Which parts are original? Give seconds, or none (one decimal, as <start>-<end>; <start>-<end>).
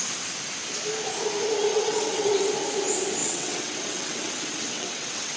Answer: 0.0-1.7; 2.5-3.2